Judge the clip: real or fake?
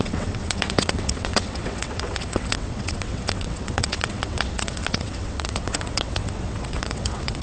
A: fake